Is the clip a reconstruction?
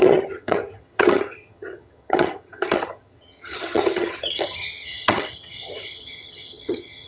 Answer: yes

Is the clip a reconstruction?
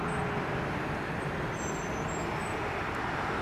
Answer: yes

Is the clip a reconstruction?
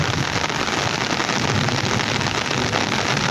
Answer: no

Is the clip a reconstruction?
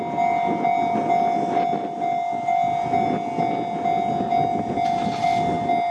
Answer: no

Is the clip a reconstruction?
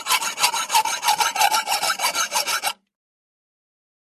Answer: yes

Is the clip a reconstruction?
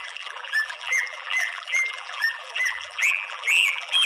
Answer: yes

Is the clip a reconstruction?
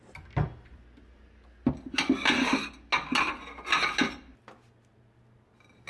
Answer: no